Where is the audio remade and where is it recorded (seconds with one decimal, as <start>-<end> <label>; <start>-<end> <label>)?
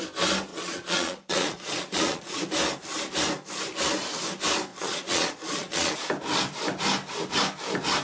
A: 0.0-0.5 recorded; 0.5-2.4 remade; 2.4-4.7 recorded; 4.7-6.0 remade; 6.0-8.0 recorded